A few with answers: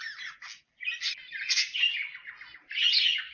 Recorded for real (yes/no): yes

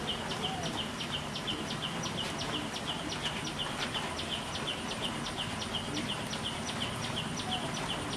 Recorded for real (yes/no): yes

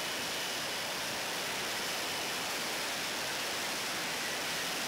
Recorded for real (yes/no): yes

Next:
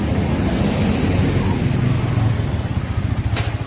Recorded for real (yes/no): yes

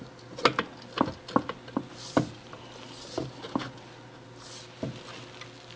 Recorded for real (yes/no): yes